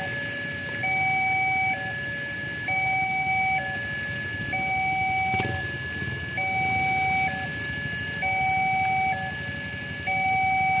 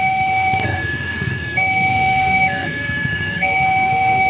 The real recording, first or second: first